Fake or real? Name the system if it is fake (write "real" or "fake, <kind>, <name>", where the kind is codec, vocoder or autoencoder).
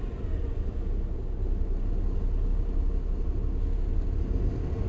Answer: real